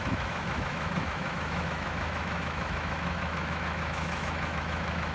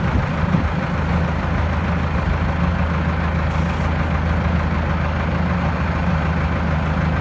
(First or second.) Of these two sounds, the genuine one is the second